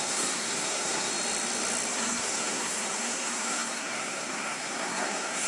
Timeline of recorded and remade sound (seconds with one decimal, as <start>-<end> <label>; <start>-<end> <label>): 0.0-1.1 remade; 1.1-1.9 recorded; 1.9-5.5 remade